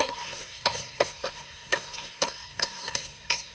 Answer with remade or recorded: remade